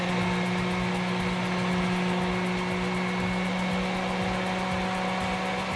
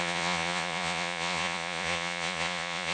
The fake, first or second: second